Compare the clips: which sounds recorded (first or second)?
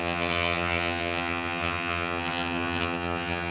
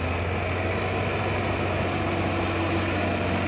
second